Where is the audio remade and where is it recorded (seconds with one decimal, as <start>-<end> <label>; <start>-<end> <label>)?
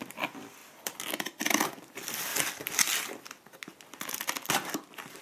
0.0-0.6 remade; 0.6-1.9 recorded; 1.9-2.3 remade; 2.3-4.5 recorded; 4.5-5.2 remade